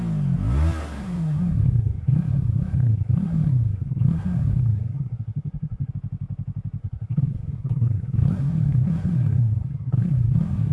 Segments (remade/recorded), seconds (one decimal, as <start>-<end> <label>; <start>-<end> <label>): 0.0-0.8 recorded; 0.8-5.9 remade; 5.9-6.8 recorded; 6.8-10.7 remade